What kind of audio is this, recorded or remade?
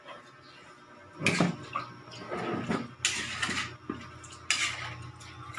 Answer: recorded